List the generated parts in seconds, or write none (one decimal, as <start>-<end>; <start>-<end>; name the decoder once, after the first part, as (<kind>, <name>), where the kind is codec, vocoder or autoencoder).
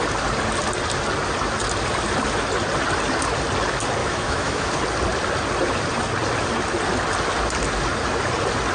4.0-4.7 (autoencoder, DAC-VAE)